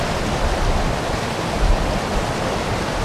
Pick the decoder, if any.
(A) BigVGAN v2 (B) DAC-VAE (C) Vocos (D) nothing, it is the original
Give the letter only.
D